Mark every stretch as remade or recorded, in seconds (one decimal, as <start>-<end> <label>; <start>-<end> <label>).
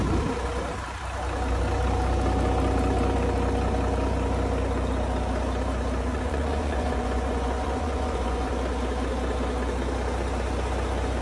0.0-6.1 recorded; 6.1-8.5 remade; 8.5-11.2 recorded